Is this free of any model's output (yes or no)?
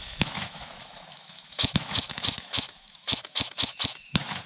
no